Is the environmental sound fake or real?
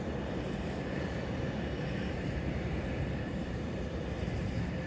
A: fake